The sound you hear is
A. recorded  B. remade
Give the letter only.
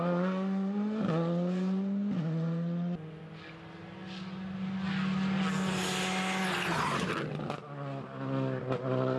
A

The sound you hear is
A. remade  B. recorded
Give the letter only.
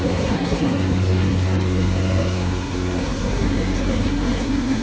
A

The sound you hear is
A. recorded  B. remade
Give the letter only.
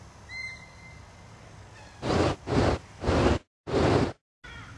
A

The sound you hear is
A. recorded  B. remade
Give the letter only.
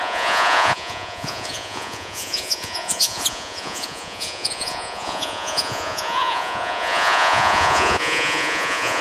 B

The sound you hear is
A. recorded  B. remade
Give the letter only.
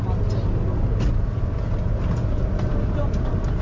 A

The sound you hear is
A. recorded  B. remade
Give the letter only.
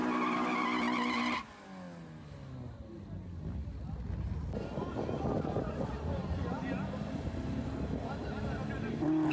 A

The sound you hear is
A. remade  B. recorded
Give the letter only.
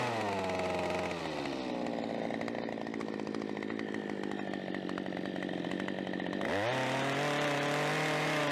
B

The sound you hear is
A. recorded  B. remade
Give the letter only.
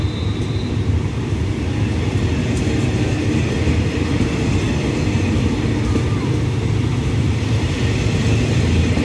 A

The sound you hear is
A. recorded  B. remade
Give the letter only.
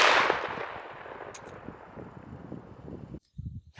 A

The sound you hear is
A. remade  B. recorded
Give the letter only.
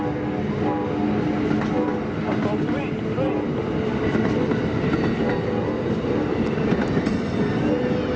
B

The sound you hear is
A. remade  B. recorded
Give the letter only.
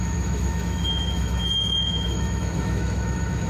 A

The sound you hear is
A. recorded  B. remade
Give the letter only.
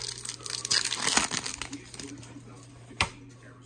A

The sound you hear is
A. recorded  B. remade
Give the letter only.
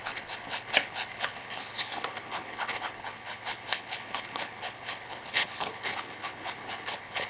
B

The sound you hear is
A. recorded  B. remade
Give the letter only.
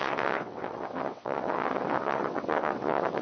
B